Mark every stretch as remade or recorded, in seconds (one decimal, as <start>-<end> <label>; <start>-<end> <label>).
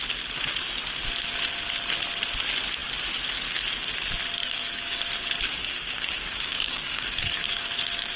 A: 0.0-4.4 recorded; 4.4-5.0 remade; 5.0-5.6 recorded; 5.6-8.2 remade